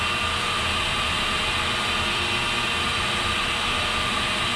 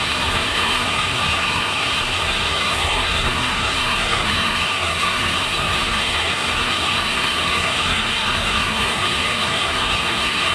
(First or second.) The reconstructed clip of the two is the second